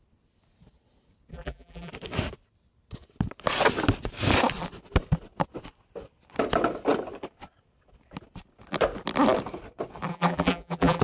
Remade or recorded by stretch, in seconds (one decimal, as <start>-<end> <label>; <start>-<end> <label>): 0.0-1.3 recorded; 1.3-1.9 remade; 1.9-10.1 recorded; 10.1-11.0 remade